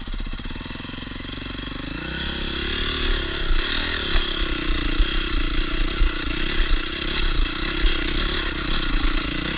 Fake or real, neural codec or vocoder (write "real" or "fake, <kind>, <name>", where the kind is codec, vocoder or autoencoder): real